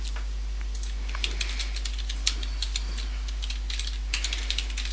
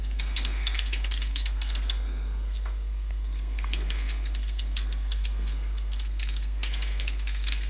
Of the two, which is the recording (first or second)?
first